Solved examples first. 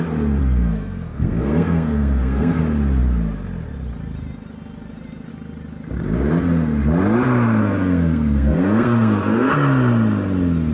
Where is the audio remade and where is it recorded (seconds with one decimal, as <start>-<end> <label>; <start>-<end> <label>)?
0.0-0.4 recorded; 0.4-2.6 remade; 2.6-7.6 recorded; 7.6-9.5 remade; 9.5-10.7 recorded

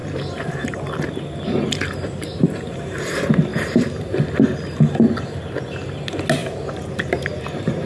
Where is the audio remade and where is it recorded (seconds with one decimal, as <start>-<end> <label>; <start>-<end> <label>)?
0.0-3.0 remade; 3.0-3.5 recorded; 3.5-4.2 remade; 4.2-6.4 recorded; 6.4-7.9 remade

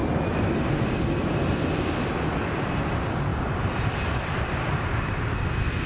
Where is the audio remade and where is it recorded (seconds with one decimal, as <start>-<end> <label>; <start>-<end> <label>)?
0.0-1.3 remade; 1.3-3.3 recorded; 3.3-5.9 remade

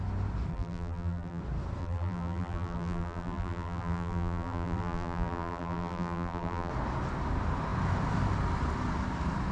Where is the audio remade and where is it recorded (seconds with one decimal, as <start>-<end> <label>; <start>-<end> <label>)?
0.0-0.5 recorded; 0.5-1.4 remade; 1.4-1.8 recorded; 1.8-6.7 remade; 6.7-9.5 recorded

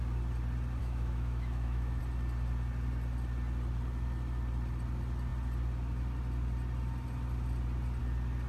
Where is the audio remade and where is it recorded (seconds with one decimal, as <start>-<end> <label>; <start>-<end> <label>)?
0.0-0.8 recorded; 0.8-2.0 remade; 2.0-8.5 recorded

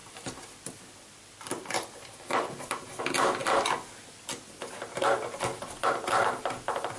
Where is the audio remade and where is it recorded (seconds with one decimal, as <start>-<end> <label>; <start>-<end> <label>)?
0.0-7.0 recorded